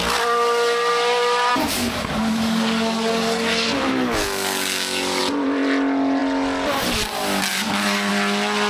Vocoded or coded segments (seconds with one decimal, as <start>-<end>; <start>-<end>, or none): 1.5-5.2; 7.5-8.1